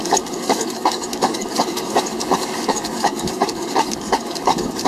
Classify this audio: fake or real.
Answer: fake